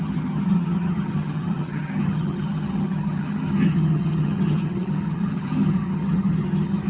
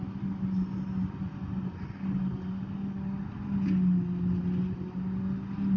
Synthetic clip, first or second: first